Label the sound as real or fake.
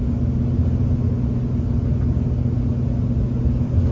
real